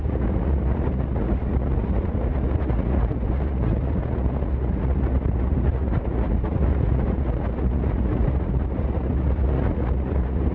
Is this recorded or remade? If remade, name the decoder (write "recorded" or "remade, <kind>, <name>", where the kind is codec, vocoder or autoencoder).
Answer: remade, vocoder, Vocos